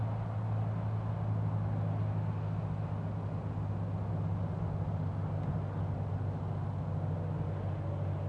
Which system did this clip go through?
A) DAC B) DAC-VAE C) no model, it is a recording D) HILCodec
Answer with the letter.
C